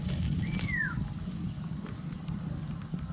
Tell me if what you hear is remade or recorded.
recorded